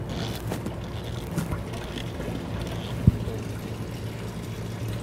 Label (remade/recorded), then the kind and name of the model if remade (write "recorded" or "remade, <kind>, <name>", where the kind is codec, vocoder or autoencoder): recorded